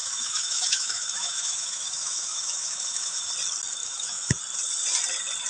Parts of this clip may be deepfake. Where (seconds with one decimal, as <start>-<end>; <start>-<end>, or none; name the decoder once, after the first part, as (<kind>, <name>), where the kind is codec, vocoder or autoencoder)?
0.0-3.3 (autoencoder, DAC-VAE); 3.8-4.4